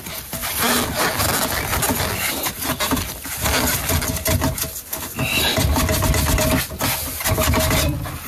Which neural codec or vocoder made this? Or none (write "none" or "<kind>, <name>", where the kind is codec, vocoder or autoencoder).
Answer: none